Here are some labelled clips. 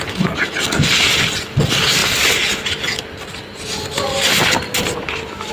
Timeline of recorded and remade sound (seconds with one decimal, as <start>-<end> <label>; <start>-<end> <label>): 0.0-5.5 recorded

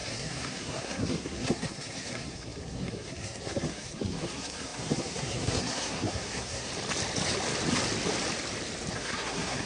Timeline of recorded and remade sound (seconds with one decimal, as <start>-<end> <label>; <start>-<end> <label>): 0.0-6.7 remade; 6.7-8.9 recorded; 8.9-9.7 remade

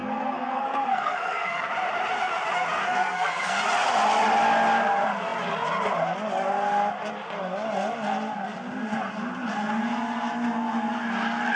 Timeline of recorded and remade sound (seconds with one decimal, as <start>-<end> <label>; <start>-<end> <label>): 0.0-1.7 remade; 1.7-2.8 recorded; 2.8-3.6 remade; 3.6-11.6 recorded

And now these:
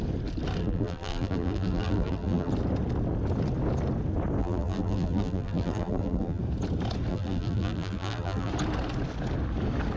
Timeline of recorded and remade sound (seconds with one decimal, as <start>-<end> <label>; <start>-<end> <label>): 0.0-0.6 recorded; 0.6-2.5 remade; 2.5-4.4 recorded; 4.4-6.4 remade; 6.4-7.1 recorded; 7.1-8.5 remade; 8.5-10.0 recorded

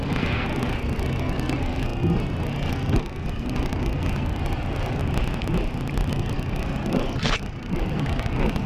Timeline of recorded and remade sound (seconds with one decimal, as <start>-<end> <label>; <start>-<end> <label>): 0.0-5.0 remade; 5.0-6.1 recorded; 6.1-8.7 remade